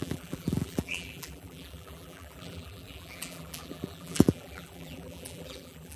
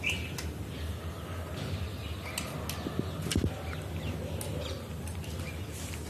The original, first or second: second